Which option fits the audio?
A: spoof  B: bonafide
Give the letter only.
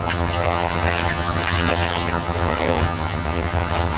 A